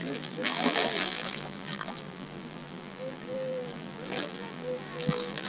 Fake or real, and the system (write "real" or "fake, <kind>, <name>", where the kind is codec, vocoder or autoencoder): fake, vocoder, BigVGAN v2